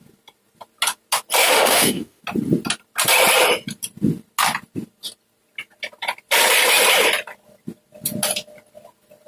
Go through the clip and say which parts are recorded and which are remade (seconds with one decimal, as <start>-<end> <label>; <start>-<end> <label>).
0.0-1.4 recorded; 1.4-2.2 remade; 2.2-9.3 recorded